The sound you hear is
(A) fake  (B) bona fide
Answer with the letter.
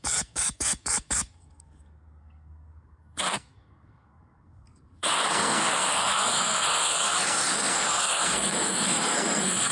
A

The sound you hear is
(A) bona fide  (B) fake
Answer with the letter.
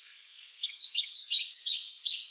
B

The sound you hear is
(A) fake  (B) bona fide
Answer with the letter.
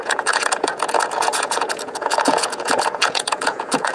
A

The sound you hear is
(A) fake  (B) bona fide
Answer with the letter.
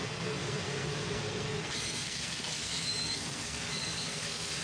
A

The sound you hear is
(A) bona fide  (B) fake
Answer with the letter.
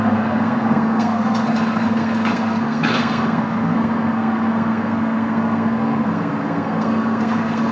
B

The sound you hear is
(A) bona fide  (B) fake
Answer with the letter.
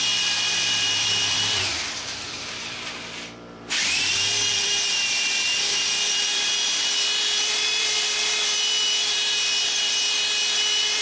B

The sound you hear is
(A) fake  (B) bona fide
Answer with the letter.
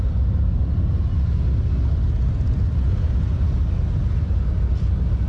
B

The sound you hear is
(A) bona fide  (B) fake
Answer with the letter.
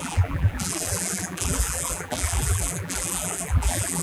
B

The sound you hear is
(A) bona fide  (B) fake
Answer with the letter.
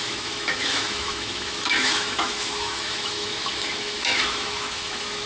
B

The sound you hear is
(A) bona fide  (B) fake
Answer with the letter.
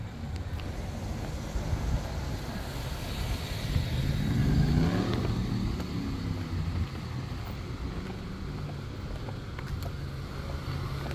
A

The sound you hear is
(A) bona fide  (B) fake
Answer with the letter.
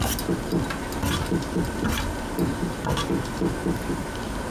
A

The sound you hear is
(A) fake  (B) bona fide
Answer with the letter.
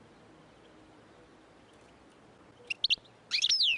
B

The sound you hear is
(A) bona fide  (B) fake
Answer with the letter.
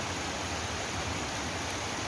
B